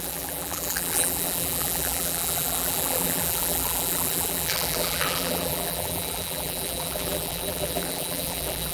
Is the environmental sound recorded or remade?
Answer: remade